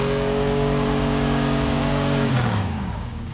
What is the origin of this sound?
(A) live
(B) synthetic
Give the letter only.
B